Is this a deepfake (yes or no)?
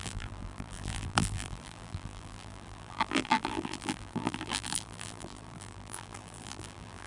yes